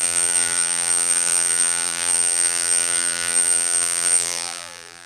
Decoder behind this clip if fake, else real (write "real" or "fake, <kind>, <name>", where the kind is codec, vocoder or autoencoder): fake, vocoder, BigVGAN v2